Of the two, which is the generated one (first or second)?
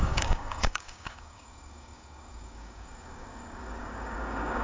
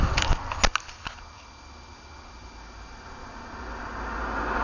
first